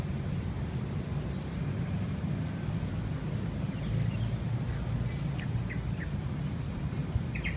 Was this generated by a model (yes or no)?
no